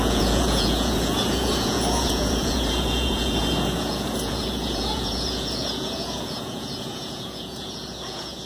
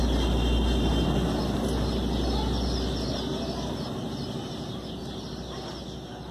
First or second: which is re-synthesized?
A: first